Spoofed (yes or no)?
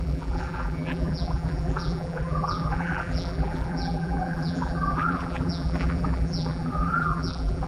yes